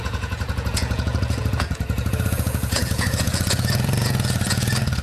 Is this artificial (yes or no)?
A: yes